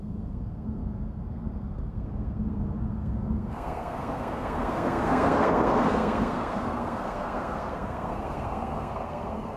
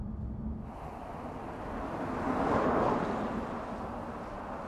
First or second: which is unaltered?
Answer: second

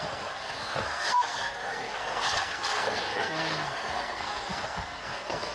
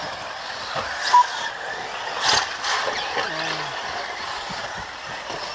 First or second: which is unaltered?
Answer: second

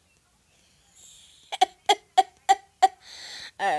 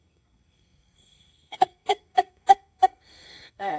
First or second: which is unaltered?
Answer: first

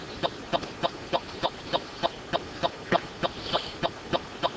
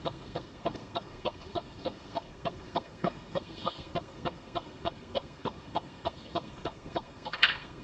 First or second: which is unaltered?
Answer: first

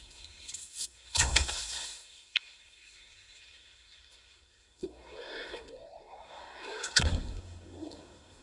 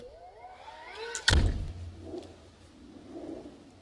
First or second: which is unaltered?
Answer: second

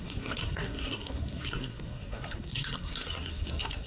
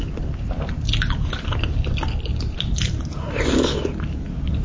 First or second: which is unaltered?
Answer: second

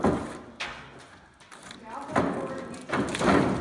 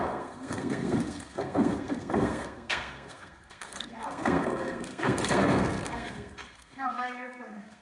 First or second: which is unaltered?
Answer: first